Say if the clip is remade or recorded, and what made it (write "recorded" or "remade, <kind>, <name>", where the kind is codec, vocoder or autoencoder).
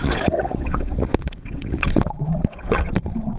remade, vocoder, WaveNeXt